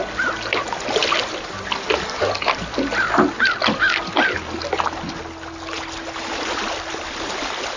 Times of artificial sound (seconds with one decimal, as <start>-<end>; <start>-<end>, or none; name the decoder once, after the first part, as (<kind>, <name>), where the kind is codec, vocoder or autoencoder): none